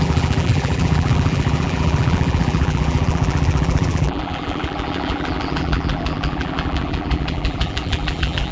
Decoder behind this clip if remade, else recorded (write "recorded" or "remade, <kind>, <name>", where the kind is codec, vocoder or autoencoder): remade, vocoder, BigVGAN v2